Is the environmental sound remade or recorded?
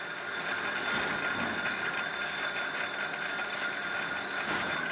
recorded